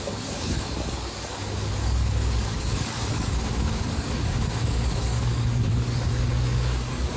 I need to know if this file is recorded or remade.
remade